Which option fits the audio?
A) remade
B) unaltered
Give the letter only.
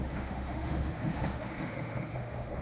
A